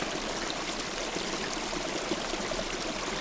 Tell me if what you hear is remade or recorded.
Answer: recorded